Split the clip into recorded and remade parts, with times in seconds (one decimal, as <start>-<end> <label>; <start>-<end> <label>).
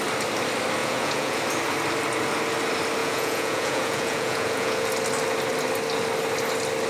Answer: 0.0-0.8 recorded; 0.8-1.4 remade; 1.4-3.0 recorded; 3.0-4.9 remade; 4.9-6.9 recorded